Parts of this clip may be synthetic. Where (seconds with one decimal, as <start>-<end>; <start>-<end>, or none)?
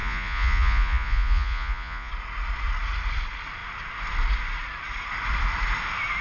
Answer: 0.0-2.1